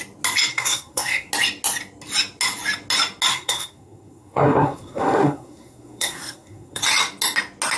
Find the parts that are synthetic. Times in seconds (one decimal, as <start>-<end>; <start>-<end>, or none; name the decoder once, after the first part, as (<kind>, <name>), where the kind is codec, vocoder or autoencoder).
0.5-1.3 (codec, SNAC); 3.3-6.8